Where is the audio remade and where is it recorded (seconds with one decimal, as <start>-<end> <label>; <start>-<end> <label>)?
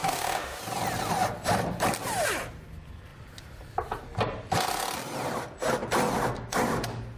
0.0-0.6 remade; 0.6-7.2 recorded